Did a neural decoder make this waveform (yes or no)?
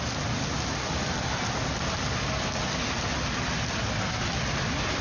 no